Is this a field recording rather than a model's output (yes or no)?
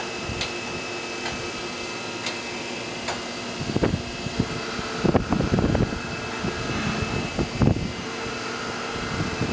yes